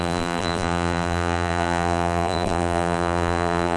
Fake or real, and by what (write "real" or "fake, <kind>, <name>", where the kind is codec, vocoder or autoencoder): fake, vocoder, BigVGAN v2